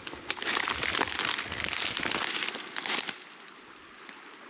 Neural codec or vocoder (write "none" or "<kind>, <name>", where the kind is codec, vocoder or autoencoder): none